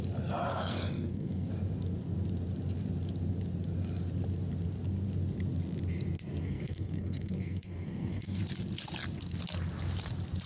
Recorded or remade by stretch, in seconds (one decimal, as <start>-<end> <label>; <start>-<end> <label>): 0.0-0.5 recorded; 0.5-1.5 remade; 1.5-6.4 recorded; 6.4-8.4 remade; 8.4-10.5 recorded